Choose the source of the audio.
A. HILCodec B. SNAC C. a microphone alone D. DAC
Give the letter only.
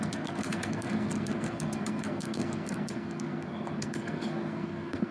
B